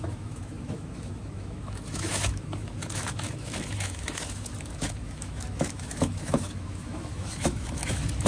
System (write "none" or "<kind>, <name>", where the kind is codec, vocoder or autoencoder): autoencoder, DAC-VAE